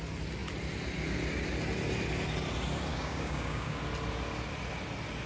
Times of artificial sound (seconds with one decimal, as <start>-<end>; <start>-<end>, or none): 2.9-3.8